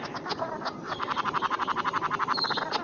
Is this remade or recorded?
recorded